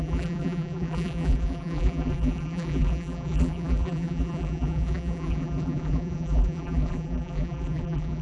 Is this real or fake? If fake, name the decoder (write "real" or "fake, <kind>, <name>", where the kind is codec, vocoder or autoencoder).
fake, vocoder, BigVGAN v2